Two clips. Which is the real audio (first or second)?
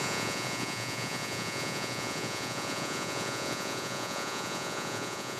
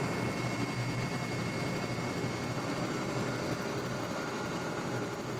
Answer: second